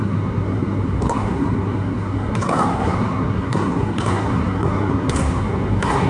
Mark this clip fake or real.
fake